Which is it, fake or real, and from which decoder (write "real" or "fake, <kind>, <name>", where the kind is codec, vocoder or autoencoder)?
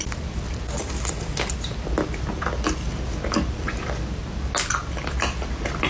real